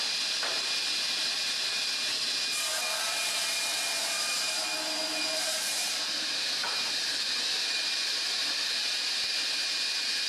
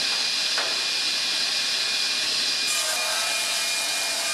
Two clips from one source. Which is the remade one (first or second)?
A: first